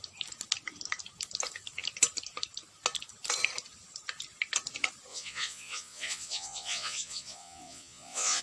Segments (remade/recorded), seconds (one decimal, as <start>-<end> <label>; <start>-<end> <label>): 0.0-5.1 recorded; 5.1-8.4 remade